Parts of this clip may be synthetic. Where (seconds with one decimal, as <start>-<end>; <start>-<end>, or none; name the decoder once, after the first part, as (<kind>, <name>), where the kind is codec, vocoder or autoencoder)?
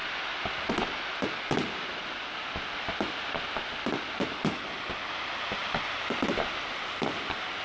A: none